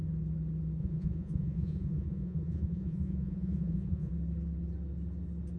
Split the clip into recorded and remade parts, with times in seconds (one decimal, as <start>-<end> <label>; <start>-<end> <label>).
0.0-0.8 recorded; 0.8-4.1 remade; 4.1-5.6 recorded